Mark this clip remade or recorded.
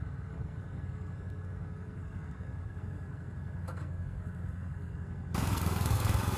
remade